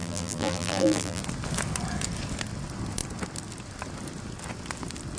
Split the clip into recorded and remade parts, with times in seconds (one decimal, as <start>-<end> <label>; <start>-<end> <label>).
0.0-1.2 remade; 1.2-5.2 recorded